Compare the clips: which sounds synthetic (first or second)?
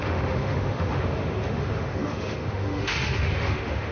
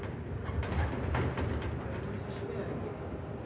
first